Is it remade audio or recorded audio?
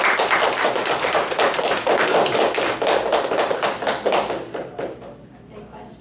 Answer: recorded